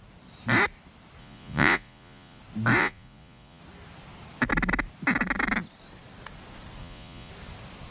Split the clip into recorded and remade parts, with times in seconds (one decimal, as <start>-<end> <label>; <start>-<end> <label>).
0.0-1.2 recorded; 1.2-2.4 remade; 2.4-2.8 recorded; 2.8-3.6 remade; 3.6-6.8 recorded; 6.8-7.3 remade; 7.3-7.9 recorded

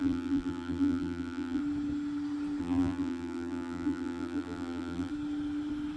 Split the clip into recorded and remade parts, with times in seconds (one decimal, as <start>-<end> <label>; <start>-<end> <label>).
0.0-1.6 remade; 1.6-2.6 recorded; 2.6-5.1 remade; 5.1-6.0 recorded

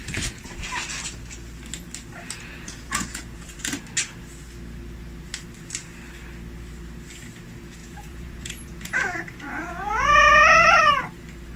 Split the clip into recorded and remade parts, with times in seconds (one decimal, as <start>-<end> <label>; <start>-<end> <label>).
0.0-2.5 recorded; 2.5-3.6 remade; 3.6-7.8 recorded; 7.8-10.8 remade; 10.8-11.6 recorded

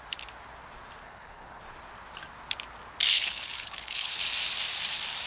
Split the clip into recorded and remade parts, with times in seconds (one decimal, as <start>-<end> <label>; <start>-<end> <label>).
0.0-1.0 recorded; 1.0-1.6 remade; 1.6-3.1 recorded; 3.1-4.2 remade; 4.2-5.3 recorded

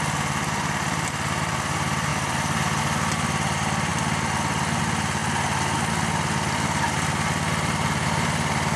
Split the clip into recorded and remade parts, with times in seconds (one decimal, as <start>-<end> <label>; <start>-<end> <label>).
0.0-8.8 recorded

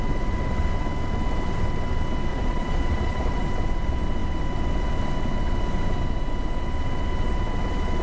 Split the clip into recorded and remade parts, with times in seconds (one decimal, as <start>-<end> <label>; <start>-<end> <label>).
0.0-2.3 recorded; 2.3-3.5 remade; 3.5-8.0 recorded

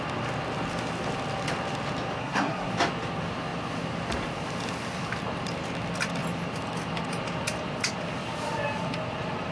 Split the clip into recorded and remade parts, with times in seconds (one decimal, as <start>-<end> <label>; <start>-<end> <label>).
0.0-2.2 recorded; 2.2-2.7 remade; 2.7-9.5 recorded